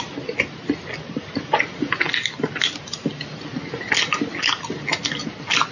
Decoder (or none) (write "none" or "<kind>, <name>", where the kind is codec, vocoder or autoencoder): none